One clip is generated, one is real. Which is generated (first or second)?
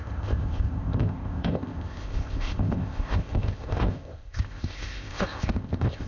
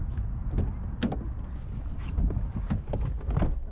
first